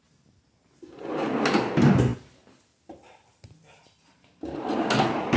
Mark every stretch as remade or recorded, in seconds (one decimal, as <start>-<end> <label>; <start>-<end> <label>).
0.0-5.4 recorded